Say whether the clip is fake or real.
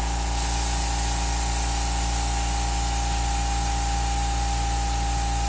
real